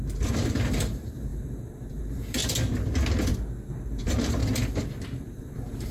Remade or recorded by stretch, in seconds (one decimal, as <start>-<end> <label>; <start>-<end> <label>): 0.0-2.4 remade; 2.4-4.0 recorded; 4.0-4.4 remade; 4.4-4.9 recorded; 4.9-5.9 remade